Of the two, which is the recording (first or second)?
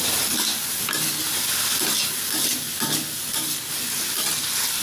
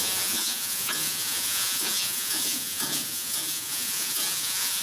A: first